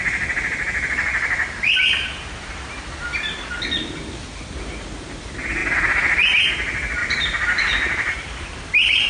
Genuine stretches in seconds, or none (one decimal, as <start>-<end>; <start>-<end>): 0.0-7.0